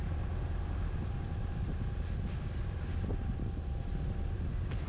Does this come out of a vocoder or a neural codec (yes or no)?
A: no